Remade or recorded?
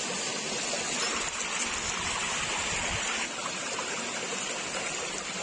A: recorded